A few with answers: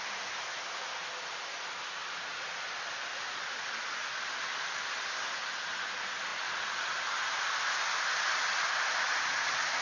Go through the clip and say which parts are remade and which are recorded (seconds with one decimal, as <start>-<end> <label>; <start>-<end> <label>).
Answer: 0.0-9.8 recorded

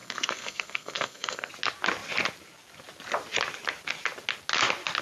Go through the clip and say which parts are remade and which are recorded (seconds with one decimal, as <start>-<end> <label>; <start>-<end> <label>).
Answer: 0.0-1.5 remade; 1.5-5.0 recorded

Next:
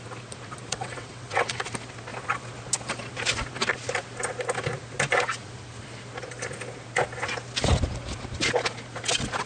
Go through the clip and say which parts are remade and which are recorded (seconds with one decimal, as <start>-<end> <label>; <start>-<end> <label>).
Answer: 0.0-0.7 recorded; 0.7-1.6 remade; 1.6-9.5 recorded

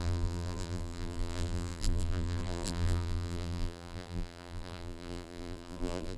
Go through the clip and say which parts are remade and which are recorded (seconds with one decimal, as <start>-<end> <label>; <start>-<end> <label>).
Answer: 0.0-6.2 remade

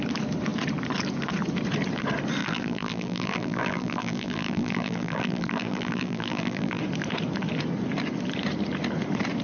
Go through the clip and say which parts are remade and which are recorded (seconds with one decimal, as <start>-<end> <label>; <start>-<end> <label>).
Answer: 0.0-2.4 recorded; 2.4-6.8 remade; 6.8-9.4 recorded

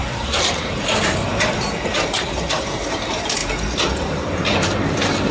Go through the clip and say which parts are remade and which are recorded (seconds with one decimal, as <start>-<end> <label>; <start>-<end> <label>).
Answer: 0.0-3.4 remade; 3.4-4.0 recorded; 4.0-5.3 remade

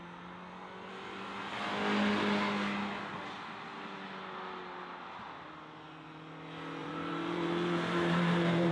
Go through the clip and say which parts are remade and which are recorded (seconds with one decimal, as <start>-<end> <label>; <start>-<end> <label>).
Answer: 0.0-6.8 recorded; 6.8-8.7 remade

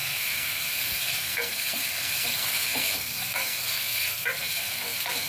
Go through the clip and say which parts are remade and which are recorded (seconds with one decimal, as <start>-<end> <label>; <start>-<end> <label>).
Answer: 0.0-5.3 remade